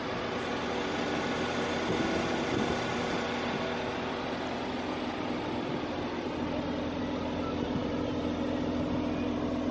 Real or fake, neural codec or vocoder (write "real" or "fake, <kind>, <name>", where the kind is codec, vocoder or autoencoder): real